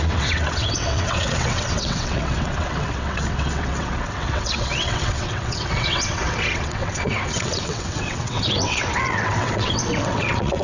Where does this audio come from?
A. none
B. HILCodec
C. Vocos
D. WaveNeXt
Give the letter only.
D